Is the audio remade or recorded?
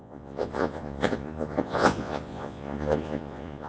remade